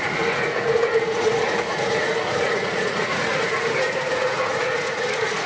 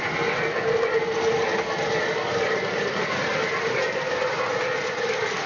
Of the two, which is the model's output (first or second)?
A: first